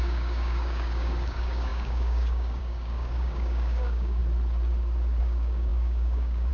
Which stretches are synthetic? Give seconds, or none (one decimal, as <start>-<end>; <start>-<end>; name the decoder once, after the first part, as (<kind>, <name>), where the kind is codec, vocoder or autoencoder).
0.0-4.2 (codec, DAC); 5.2-6.5